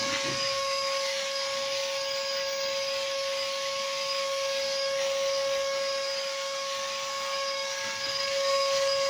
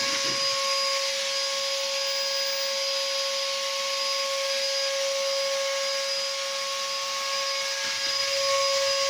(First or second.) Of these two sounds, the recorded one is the second